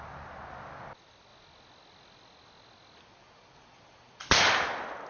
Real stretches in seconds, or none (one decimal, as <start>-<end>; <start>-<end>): 0.0-5.1